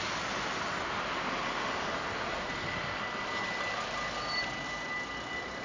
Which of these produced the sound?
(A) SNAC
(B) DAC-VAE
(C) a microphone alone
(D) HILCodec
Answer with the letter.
C